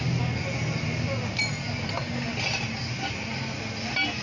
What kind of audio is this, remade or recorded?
recorded